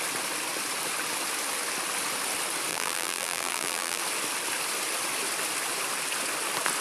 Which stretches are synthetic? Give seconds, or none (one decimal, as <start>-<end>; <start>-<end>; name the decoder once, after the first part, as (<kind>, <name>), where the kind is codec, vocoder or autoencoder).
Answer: 2.7-4.0 (vocoder, BigVGAN v2)